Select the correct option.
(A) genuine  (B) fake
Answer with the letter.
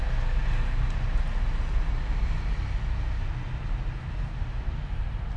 A